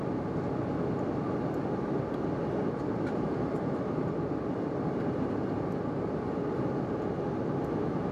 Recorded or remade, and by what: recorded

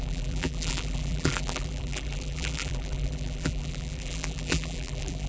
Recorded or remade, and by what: remade, vocoder, BigVGAN v2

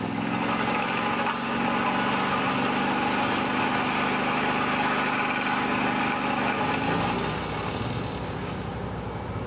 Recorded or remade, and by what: recorded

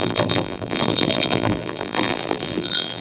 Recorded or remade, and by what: remade, vocoder, BigVGAN v2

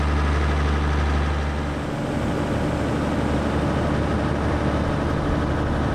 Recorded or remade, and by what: recorded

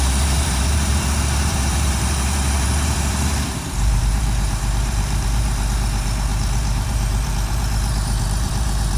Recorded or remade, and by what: remade, vocoder, BigVGAN v2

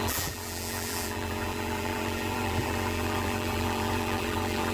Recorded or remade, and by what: remade, vocoder, BigVGAN v2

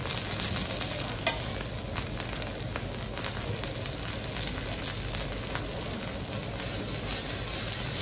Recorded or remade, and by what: recorded